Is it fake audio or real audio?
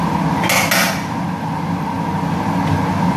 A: real